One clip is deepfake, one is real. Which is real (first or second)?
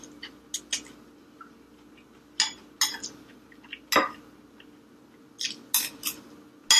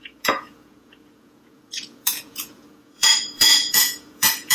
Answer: first